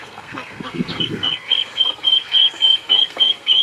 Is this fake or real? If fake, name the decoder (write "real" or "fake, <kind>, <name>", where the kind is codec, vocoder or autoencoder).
fake, codec, SNAC